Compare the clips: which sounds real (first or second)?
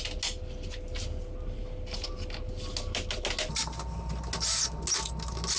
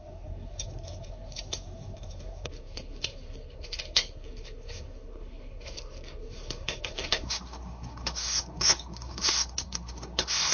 first